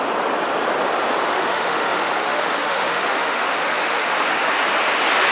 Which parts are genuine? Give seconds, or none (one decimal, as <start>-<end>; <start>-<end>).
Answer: 0.0-1.3; 4.5-5.3